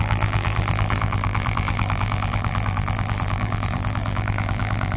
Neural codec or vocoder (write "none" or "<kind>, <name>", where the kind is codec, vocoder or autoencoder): vocoder, BigVGAN v2